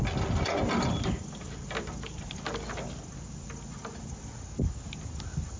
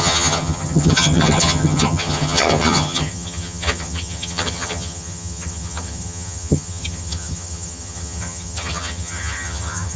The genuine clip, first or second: first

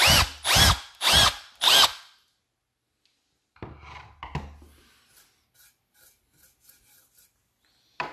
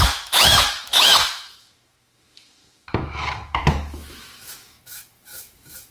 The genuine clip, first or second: first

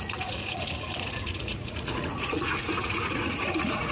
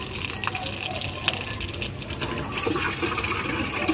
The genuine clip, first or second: second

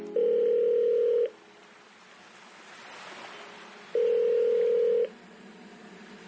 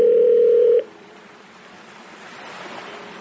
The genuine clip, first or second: first